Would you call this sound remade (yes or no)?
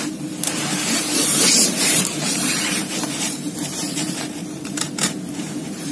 yes